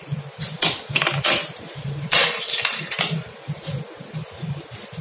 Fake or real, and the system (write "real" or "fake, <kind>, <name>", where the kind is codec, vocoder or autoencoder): fake, vocoder, BigVGAN v2